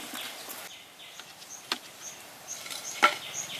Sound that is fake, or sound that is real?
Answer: real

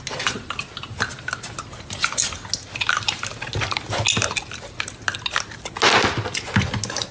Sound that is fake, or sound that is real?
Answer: real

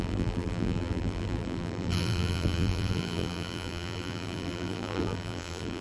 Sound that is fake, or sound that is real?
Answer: fake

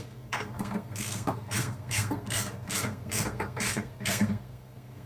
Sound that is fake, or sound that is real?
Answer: fake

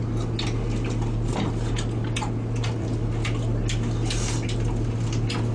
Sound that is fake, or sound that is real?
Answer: real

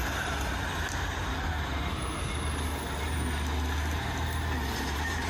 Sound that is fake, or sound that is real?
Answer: real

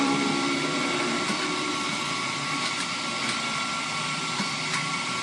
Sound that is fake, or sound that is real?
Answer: fake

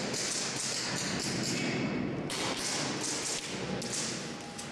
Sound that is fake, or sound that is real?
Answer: real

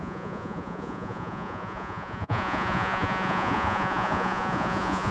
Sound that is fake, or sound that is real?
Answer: fake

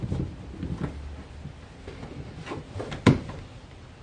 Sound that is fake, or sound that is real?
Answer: real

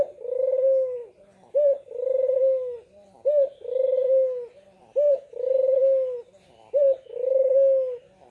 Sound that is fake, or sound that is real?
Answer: real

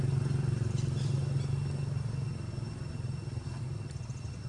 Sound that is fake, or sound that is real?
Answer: real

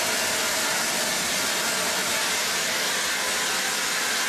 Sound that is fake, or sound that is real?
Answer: real